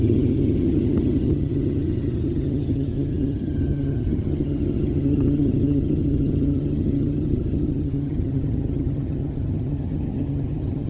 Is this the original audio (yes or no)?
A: no